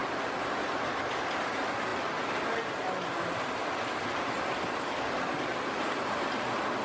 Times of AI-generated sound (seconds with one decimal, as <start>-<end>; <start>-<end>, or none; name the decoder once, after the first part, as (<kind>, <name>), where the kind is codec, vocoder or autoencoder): none